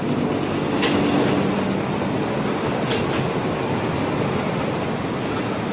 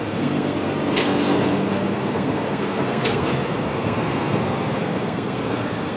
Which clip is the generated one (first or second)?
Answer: second